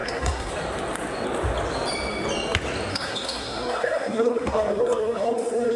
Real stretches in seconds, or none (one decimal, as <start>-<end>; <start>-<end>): 0.5-2.9